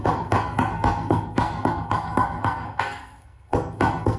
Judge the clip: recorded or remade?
remade